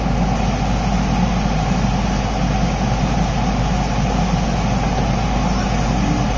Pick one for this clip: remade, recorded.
recorded